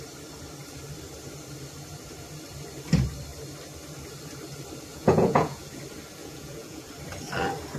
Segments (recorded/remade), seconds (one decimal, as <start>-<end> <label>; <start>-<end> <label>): 0.0-4.9 recorded; 4.9-5.8 remade; 5.8-6.2 recorded; 6.2-6.9 remade; 6.9-7.8 recorded